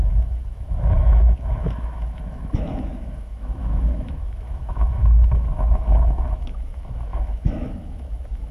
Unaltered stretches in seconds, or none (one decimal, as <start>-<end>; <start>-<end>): none